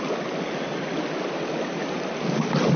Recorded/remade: recorded